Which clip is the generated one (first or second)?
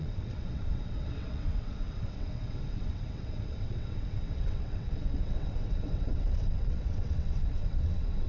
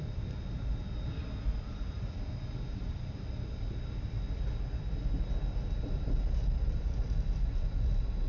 first